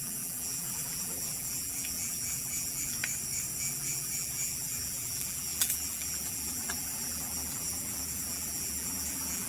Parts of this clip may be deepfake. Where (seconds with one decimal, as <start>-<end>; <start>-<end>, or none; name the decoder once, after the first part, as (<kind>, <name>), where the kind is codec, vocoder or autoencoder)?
0.0-3.0 (vocoder, BigVGAN v2); 3.6-9.5